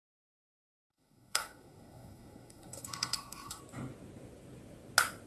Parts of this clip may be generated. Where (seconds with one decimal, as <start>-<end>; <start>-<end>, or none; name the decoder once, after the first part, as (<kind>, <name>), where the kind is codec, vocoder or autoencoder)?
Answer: 0.4-3.6 (codec, SNAC)